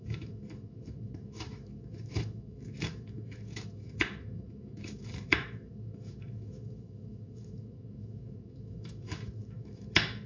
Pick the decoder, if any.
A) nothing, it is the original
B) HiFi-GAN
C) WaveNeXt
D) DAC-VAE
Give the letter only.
D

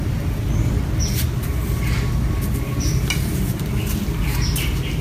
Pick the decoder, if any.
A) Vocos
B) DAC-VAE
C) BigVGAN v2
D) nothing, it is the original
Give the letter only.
D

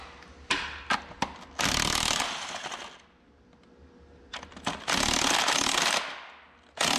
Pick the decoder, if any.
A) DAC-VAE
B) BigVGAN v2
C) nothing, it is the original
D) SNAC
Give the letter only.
C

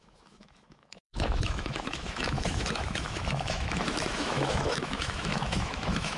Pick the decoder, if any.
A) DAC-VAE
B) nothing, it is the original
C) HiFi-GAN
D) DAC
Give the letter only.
A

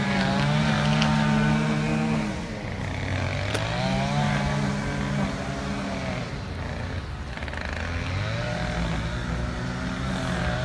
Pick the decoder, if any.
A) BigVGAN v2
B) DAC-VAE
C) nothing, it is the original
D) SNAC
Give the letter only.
C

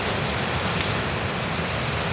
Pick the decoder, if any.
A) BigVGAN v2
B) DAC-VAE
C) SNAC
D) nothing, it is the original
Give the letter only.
D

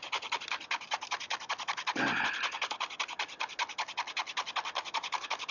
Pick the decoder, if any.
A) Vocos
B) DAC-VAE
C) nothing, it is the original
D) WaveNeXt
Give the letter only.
C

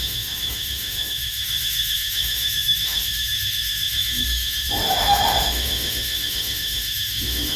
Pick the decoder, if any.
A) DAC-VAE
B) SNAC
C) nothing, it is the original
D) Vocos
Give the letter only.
A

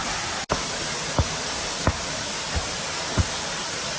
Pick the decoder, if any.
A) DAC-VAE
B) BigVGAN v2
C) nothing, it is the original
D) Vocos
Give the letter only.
C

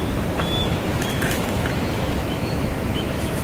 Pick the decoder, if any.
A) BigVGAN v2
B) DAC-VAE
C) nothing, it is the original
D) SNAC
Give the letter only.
B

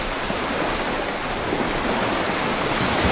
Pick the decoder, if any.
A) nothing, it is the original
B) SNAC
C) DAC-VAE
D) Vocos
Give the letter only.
A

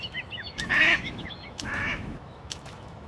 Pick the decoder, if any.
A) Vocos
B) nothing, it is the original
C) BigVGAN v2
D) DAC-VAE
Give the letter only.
D